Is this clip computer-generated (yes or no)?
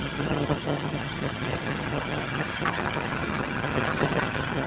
yes